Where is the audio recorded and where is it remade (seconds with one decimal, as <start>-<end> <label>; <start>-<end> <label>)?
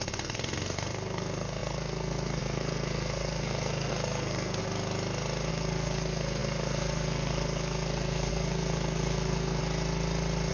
0.0-4.6 remade; 4.6-5.5 recorded; 5.5-9.6 remade; 9.6-10.5 recorded